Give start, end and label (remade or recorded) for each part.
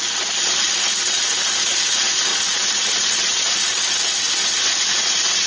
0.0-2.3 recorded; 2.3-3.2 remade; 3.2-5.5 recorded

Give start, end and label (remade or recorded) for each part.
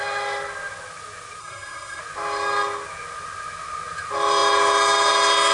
0.0-1.4 recorded; 1.4-2.0 remade; 2.0-5.5 recorded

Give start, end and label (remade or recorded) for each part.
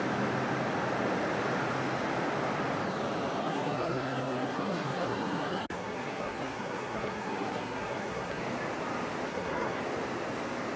0.0-3.4 recorded; 3.4-8.4 remade; 8.4-9.3 recorded; 9.3-9.8 remade; 9.8-10.8 recorded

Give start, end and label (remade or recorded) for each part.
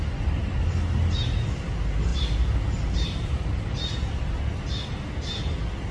0.0-5.9 recorded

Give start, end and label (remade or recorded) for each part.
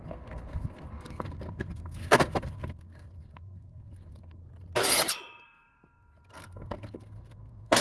0.0-4.4 remade; 4.4-6.3 recorded; 6.3-7.8 remade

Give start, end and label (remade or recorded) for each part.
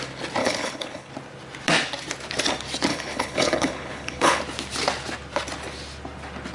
0.0-0.4 recorded; 0.4-1.1 remade; 1.1-2.9 recorded; 2.9-4.4 remade; 4.4-6.5 recorded